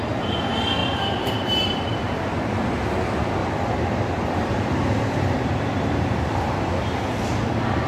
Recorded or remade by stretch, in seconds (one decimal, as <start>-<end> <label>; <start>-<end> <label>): 0.0-0.8 recorded; 0.8-2.0 remade; 2.0-3.4 recorded; 3.4-6.7 remade; 6.7-7.9 recorded